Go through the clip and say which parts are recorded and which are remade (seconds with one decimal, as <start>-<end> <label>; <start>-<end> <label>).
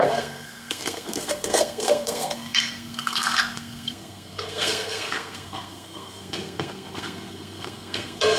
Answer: 0.0-8.4 remade